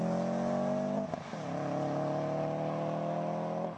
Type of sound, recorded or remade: recorded